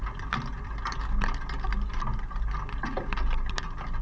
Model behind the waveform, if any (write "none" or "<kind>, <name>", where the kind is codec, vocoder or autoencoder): none